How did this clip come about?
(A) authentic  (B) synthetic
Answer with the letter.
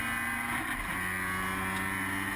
A